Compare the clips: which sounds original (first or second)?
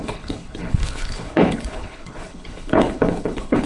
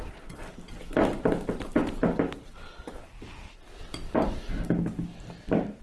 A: second